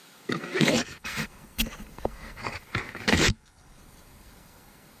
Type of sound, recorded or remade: remade